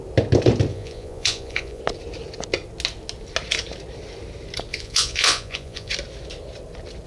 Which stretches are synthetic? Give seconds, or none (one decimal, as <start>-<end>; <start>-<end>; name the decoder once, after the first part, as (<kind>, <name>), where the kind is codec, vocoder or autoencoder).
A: 0.7-1.8 (vocoder, Vocos); 4.7-5.9